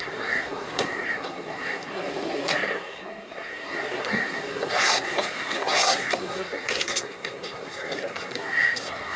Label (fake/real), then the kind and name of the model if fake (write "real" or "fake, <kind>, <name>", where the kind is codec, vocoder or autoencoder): fake, codec, SNAC